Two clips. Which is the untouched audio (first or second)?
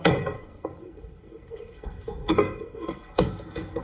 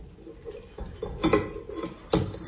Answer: second